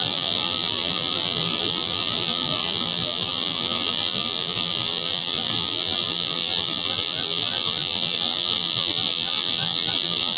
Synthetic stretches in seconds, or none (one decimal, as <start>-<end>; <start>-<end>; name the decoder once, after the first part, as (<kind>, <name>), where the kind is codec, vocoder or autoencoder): 0.0-10.4 (vocoder, BigVGAN v2)